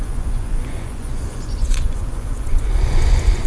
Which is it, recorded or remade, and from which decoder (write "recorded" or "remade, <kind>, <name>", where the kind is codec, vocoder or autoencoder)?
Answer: remade, vocoder, Vocos